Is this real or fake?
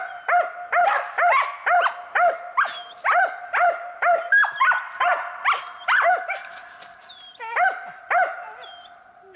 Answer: real